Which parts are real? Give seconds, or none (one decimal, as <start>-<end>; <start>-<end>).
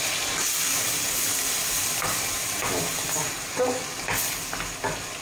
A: 0.0-0.7; 3.8-5.2